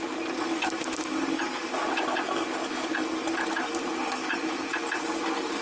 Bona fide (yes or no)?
yes